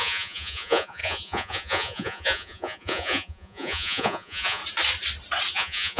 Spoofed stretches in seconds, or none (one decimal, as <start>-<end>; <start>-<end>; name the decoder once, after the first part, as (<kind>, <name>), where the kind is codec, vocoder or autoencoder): 0.0-4.6 (vocoder, Vocos); 5.5-6.0